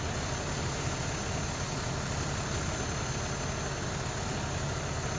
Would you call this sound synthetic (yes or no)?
no